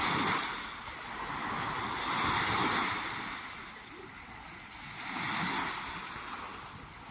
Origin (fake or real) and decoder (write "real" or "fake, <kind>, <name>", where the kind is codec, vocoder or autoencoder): real